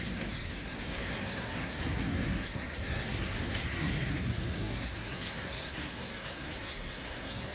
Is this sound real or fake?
fake